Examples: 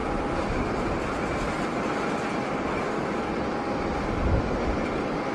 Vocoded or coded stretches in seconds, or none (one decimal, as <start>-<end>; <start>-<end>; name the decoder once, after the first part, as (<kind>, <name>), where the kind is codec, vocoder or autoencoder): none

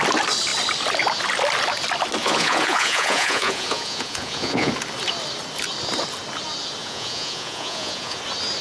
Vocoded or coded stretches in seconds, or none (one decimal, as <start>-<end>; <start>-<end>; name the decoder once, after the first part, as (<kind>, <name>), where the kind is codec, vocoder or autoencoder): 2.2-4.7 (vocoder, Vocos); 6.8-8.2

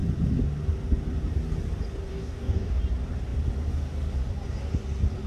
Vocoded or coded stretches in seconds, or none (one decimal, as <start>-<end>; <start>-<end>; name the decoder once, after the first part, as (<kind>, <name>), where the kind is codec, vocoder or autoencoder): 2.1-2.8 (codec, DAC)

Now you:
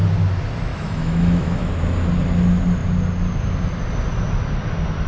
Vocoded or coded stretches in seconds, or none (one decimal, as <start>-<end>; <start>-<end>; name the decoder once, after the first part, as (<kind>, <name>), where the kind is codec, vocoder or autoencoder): 0.7-1.7 (autoencoder, DAC-VAE)

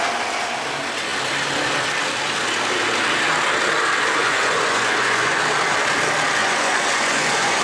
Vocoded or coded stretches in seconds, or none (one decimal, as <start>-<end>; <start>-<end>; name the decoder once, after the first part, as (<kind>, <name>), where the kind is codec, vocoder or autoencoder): 4.2-5.4 (vocoder, Vocos); 6.4-7.6

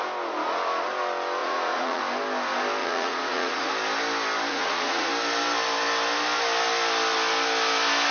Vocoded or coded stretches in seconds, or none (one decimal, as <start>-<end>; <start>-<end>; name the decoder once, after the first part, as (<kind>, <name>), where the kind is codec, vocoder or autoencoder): 1.4-2.0 (vocoder, Vocos); 2.8-3.7; 4.5-5.1